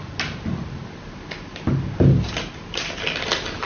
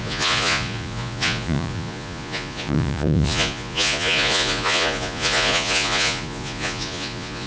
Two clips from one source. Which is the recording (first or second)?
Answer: first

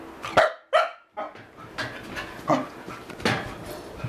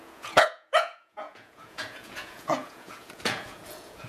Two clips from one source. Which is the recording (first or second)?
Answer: first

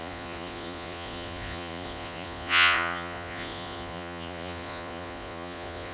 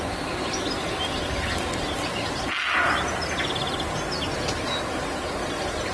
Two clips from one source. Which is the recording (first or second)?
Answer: second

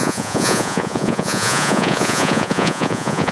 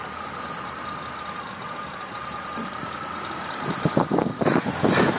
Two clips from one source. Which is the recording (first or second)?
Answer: second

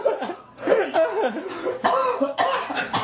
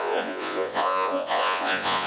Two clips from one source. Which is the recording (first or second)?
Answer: first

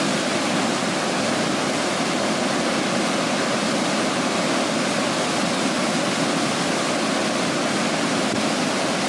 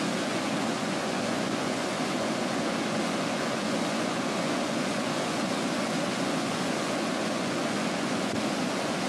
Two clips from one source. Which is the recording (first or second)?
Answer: first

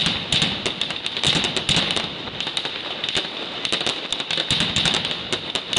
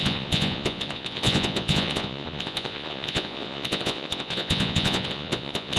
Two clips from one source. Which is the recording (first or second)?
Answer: first